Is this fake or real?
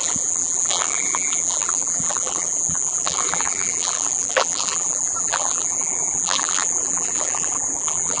fake